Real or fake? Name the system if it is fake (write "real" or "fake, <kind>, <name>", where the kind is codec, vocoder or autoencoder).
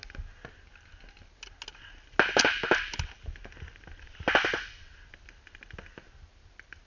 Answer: real